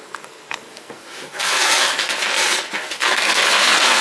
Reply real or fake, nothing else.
fake